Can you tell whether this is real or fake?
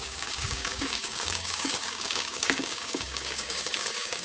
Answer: fake